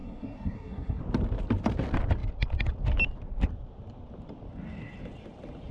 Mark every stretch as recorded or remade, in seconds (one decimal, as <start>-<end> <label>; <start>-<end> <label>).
0.0-1.0 remade; 1.0-5.7 recorded

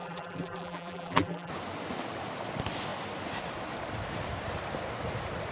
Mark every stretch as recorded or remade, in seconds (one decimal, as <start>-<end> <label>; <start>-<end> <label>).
0.0-1.5 remade; 1.5-5.5 recorded

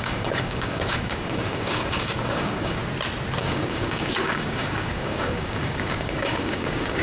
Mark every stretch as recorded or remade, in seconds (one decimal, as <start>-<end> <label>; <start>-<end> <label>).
0.0-2.8 remade; 2.8-3.4 recorded; 3.4-7.0 remade